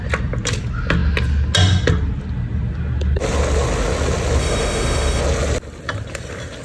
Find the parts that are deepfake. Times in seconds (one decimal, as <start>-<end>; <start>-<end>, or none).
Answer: 4.4-5.2